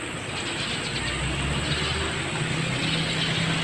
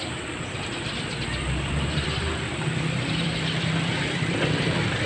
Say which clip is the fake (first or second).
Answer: second